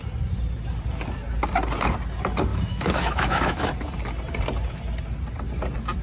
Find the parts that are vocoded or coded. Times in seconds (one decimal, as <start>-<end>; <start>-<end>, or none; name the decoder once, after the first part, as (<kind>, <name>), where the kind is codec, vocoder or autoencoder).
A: 2.5-3.7 (autoencoder, DAC-VAE)